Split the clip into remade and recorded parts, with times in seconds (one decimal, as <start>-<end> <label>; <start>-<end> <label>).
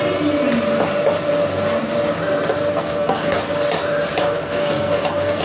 0.0-2.7 recorded; 2.7-3.4 remade; 3.4-4.2 recorded; 4.2-5.4 remade